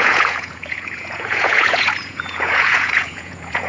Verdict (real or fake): fake